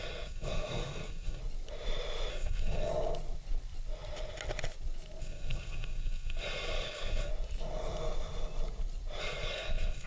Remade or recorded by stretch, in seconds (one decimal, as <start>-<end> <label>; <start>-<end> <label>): 0.0-1.4 remade; 1.4-2.3 recorded; 2.3-2.9 remade; 2.9-5.2 recorded; 5.2-7.3 remade; 7.3-9.2 recorded; 9.2-10.1 remade